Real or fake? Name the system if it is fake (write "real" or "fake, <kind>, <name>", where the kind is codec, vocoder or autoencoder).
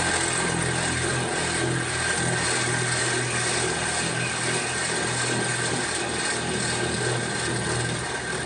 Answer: real